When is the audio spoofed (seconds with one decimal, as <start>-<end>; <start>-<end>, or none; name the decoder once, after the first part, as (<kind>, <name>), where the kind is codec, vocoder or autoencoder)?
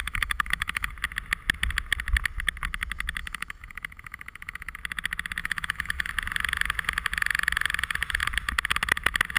0.0-0.9 (autoencoder, DAC-VAE); 3.2-4.8; 5.4-6.1